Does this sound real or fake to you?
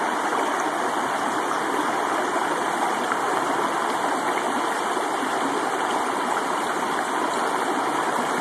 real